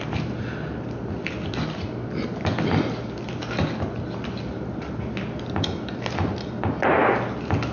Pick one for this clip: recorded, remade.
recorded